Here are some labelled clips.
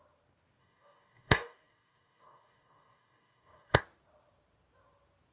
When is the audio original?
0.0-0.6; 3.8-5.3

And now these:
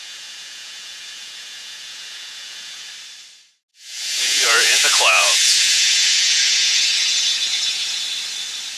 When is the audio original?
2.9-3.7; 8.0-8.8

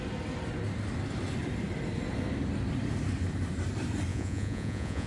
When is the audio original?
0.0-4.1

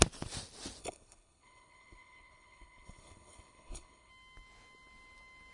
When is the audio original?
0.0-0.8; 4.1-5.5

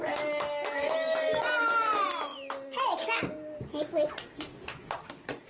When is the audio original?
0.0-5.5

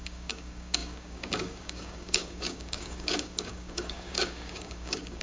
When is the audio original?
none

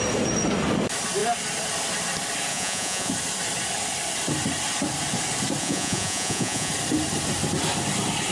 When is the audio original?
0.0-2.5; 3.1-5.6; 6.7-8.3